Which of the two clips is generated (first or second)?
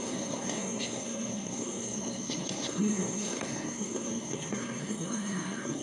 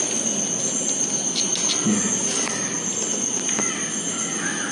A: first